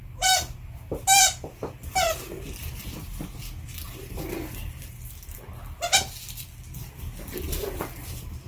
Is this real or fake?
real